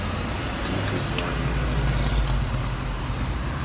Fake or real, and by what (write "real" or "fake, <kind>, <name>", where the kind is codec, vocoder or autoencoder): real